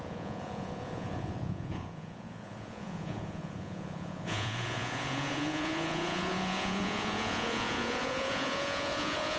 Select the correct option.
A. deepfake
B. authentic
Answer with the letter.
A